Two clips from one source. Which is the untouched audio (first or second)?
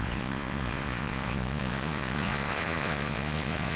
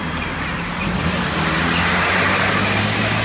second